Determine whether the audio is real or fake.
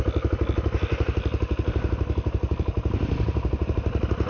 real